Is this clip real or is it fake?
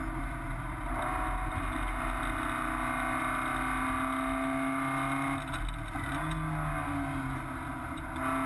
real